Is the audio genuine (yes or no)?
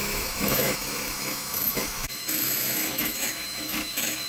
no